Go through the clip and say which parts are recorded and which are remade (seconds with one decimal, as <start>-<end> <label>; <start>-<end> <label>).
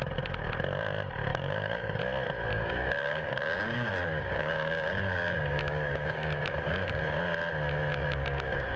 0.0-1.3 recorded; 1.3-2.0 remade; 2.0-2.5 recorded; 2.5-7.0 remade; 7.0-7.9 recorded; 7.9-8.8 remade